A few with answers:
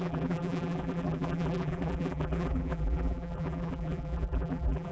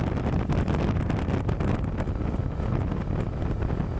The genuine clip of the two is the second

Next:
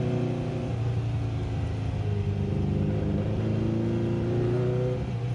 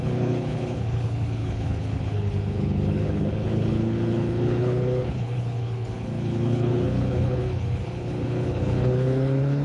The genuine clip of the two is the first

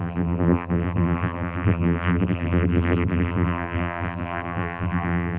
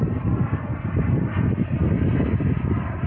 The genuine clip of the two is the second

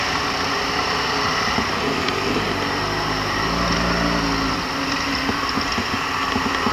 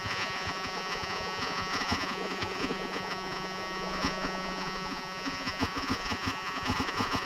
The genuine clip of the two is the first